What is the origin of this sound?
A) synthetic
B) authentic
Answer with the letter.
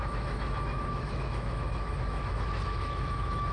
A